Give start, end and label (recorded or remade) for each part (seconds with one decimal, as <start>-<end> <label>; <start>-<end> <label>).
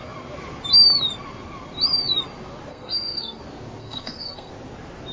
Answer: 0.0-2.7 recorded; 2.7-3.4 remade; 3.4-3.8 recorded; 3.8-4.5 remade; 4.5-5.1 recorded